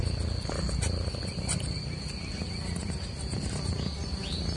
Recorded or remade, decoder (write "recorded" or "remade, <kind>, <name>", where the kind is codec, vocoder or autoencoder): recorded